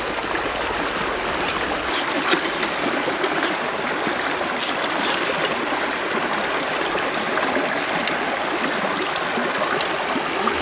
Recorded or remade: recorded